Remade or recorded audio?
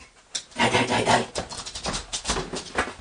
recorded